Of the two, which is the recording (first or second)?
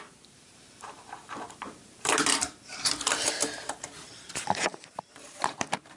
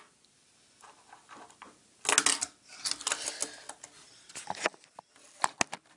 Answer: second